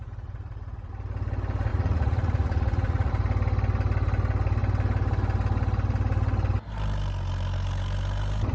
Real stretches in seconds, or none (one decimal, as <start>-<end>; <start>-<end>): 0.9-1.7; 3.1-8.5

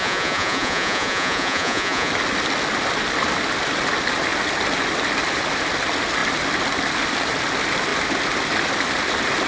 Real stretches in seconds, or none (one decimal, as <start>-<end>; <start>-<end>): 2.1-9.5

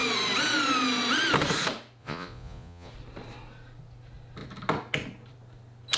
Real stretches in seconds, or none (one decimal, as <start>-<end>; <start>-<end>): 0.0-2.0; 2.9-6.0

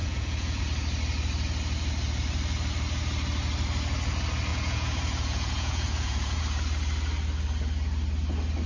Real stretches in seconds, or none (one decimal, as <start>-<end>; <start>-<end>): 0.6-4.5; 6.4-8.7

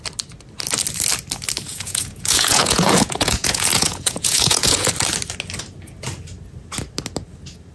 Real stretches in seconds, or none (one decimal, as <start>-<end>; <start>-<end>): 0.0-1.7; 4.9-7.7

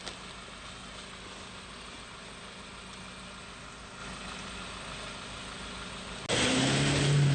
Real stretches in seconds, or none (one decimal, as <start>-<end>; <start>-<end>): 0.0-7.3